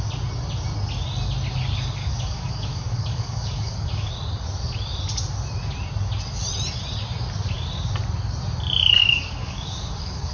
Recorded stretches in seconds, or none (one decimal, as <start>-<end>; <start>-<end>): 0.0-2.0; 4.1-9.0